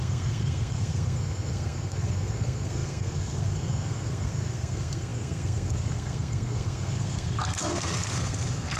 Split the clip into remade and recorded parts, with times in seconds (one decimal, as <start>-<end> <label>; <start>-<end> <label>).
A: 0.0-8.8 remade